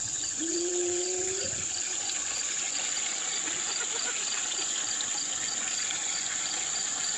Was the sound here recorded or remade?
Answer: remade